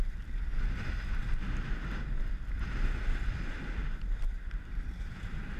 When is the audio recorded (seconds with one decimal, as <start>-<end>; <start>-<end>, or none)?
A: 0.0-5.6